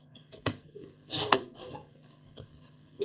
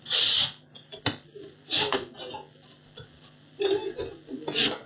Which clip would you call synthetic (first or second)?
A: first